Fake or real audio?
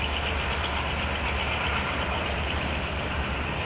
fake